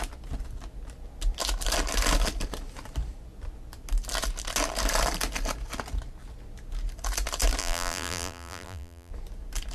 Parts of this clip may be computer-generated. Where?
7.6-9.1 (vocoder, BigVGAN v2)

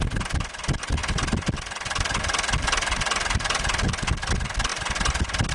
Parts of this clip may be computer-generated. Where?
none

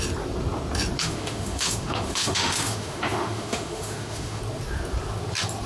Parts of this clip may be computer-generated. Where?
1.0-4.4 (autoencoder, DAC-VAE)

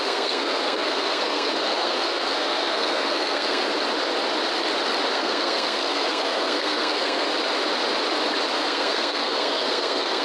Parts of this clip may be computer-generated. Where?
0.0-3.7 (codec, SNAC); 5.1-7.3; 8.5-10.2

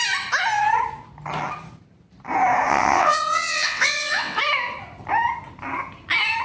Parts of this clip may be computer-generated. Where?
2.7-4.4 (vocoder, WaveNeXt)

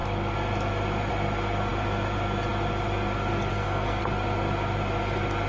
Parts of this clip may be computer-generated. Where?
3.5-4.0 (codec, SNAC)

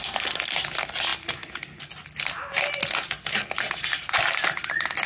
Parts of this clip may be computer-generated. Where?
none